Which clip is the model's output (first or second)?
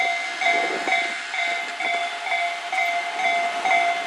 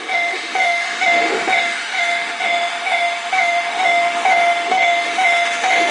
second